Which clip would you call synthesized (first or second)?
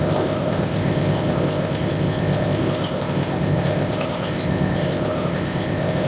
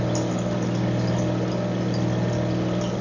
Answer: first